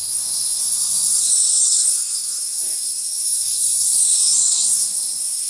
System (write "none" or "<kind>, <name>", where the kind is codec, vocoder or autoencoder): codec, SNAC